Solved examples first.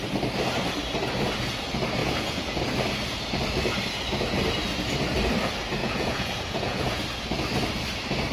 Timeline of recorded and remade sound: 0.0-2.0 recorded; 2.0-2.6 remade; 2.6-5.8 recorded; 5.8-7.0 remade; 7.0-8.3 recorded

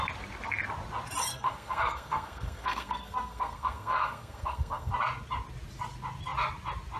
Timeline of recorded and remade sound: 0.0-1.3 recorded; 1.3-4.9 remade; 4.9-7.0 recorded